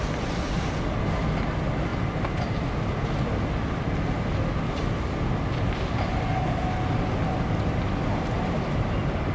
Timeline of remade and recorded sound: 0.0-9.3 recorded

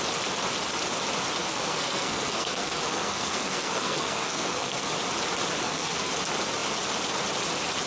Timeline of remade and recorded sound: 0.0-1.4 recorded; 1.4-4.9 remade; 4.9-5.6 recorded; 5.6-6.1 remade; 6.1-7.9 recorded

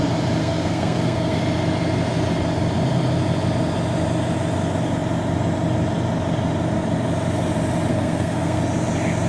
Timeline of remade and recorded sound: 0.0-0.4 recorded; 0.4-1.4 remade; 1.4-7.9 recorded; 7.9-8.6 remade; 8.6-9.3 recorded

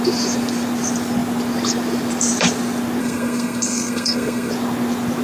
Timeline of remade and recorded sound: 0.0-3.0 recorded; 3.0-4.5 remade; 4.5-5.2 recorded